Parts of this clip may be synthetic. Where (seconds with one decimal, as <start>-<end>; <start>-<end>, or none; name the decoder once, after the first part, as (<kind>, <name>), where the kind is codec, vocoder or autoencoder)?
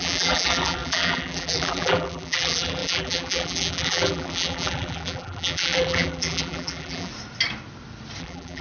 0.0-7.1 (vocoder, BigVGAN v2); 8.2-8.6